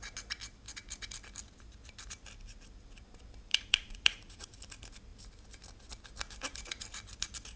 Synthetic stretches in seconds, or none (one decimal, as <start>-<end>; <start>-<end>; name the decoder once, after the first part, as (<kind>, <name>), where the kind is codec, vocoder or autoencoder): 3.5-4.6 (vocoder, Vocos)

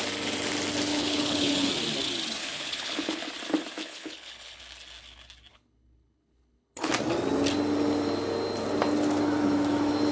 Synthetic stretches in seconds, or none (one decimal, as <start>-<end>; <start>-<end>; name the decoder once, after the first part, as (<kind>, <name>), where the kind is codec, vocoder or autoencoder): 0.9-1.7 (codec, HILCodec); 2.4-3.3; 3.8-4.6; 5.5-6.9

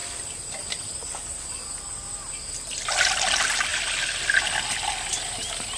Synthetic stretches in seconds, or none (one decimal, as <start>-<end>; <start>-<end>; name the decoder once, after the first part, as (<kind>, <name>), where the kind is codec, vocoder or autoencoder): none

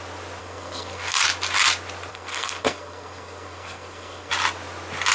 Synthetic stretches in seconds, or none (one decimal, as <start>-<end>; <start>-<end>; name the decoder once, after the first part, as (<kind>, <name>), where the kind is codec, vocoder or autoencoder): 0.4-1.2 (codec, SNAC); 2.1-4.3

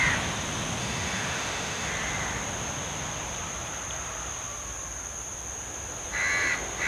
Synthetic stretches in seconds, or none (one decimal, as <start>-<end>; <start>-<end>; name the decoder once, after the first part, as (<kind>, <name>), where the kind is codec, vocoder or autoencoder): 0.8-1.9 (autoencoder, DAC-VAE)